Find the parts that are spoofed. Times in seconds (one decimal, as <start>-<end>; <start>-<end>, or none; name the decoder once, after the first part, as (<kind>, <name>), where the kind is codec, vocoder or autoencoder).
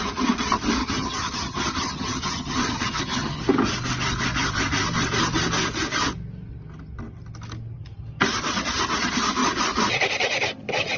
0.8-3.4 (vocoder, HiFi-GAN)